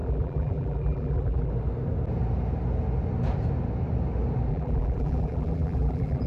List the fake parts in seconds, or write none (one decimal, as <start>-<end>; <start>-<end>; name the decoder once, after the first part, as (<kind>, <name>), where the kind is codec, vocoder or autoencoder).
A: 0.0-1.5 (vocoder, BigVGAN v2); 4.5-6.3